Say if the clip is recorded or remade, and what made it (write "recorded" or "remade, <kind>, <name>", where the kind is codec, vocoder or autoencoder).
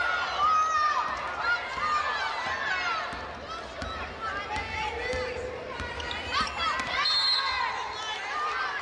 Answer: recorded